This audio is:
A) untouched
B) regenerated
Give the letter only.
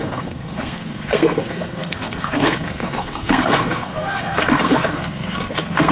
B